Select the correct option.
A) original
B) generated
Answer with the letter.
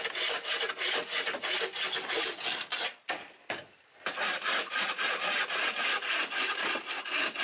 A